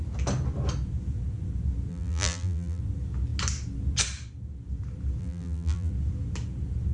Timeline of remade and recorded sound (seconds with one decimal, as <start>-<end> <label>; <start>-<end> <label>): 0.0-1.9 recorded; 1.9-2.8 remade; 2.8-5.2 recorded; 5.2-5.9 remade; 5.9-6.9 recorded